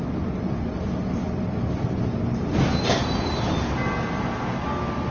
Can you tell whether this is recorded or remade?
recorded